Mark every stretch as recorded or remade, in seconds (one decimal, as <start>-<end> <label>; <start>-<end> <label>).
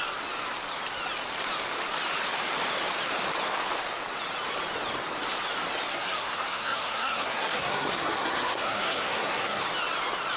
0.0-5.9 recorded; 5.9-9.6 remade; 9.6-10.4 recorded